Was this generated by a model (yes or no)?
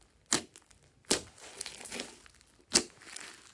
no